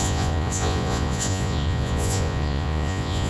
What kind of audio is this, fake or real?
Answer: fake